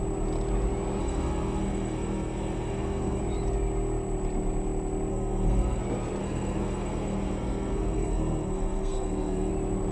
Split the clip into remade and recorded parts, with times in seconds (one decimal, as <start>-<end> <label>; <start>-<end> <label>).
0.0-1.0 recorded; 1.0-3.2 remade; 3.2-5.1 recorded; 5.1-5.8 remade; 5.8-6.2 recorded; 6.2-9.5 remade; 9.5-9.9 recorded